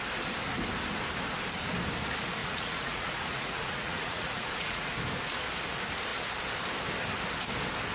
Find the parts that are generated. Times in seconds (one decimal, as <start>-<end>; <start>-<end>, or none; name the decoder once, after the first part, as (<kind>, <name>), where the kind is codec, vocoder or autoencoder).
2.4-4.9 (vocoder, Vocos)